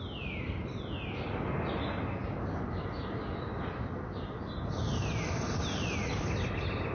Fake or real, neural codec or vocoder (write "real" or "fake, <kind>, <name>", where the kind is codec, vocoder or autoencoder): real